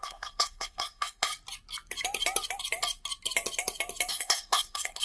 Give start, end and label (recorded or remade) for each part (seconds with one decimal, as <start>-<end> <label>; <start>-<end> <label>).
0.0-1.3 remade; 1.3-4.1 recorded; 4.1-5.0 remade